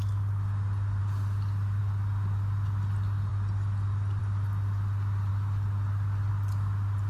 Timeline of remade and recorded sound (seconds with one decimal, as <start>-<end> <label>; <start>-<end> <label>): 0.0-7.1 recorded